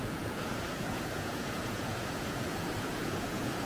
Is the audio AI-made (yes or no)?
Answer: yes